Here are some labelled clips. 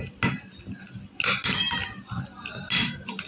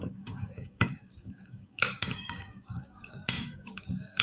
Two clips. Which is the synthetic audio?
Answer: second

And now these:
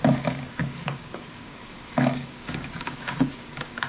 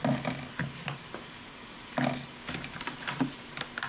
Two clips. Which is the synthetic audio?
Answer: first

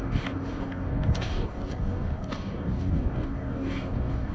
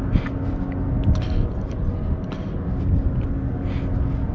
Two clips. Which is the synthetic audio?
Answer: first